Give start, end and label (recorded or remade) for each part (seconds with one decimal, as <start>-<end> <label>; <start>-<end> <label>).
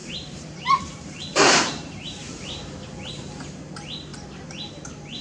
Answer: 0.0-3.1 remade; 3.1-4.1 recorded; 4.1-4.7 remade; 4.7-5.2 recorded